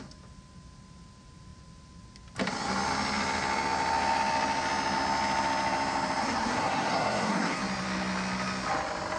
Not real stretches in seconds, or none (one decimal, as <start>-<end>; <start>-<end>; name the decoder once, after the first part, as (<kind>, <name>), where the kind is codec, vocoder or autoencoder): 6.2-7.6 (codec, SNAC)